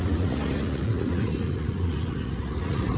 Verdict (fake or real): fake